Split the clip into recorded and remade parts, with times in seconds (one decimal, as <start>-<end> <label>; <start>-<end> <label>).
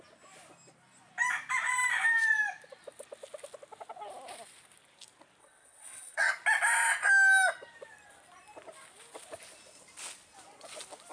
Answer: 0.0-5.4 recorded; 5.4-6.3 remade; 6.3-11.1 recorded